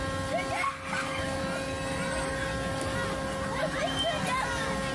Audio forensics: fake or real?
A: real